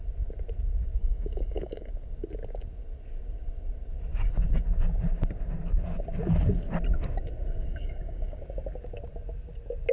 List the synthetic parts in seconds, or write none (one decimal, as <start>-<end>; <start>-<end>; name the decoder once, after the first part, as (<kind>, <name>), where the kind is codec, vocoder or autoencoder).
1.0-1.9 (codec, DAC); 7.6-8.4